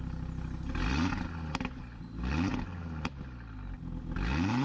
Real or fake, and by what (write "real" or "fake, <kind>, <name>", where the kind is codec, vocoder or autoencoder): real